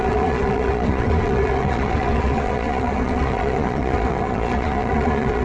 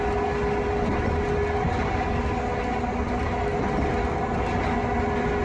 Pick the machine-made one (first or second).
first